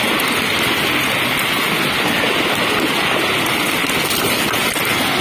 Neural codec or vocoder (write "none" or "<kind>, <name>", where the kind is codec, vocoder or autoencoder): none